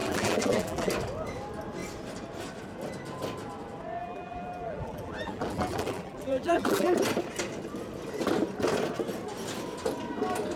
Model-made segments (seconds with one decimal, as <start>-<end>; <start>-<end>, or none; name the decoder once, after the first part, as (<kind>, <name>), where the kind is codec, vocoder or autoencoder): 0.0-0.9 (vocoder, BigVGAN v2); 4.0-6.9